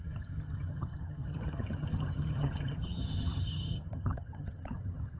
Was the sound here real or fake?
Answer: fake